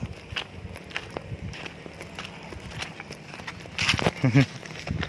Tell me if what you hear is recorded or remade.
recorded